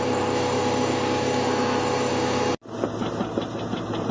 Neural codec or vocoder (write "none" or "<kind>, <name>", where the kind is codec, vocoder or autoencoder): none